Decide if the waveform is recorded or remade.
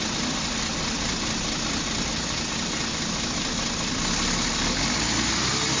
recorded